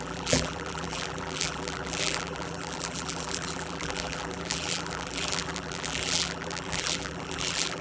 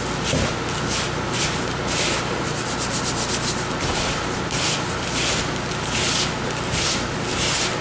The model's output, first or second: first